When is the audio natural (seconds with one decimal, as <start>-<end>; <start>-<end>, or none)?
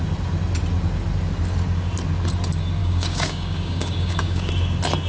0.0-2.8; 4.5-5.1